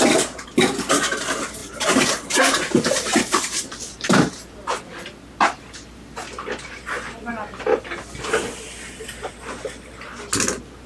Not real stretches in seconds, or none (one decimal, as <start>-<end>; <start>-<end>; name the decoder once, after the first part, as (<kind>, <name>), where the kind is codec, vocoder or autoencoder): 1.6-4.5 (vocoder, BigVGAN v2)